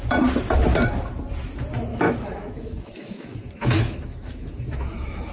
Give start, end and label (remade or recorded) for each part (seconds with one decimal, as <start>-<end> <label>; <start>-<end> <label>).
0.0-1.9 recorded; 1.9-5.3 remade